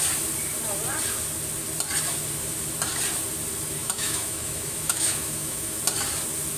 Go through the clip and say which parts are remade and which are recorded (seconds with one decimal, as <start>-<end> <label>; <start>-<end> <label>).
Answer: 0.0-3.8 recorded; 3.8-5.8 remade; 5.8-6.6 recorded